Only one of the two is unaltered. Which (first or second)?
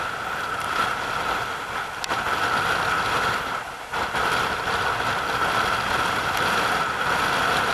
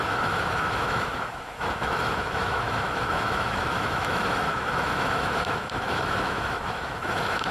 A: first